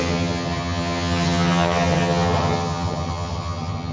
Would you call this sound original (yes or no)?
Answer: no